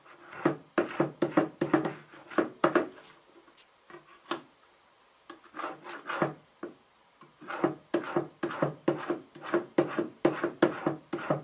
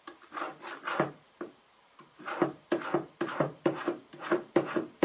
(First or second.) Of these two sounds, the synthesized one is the second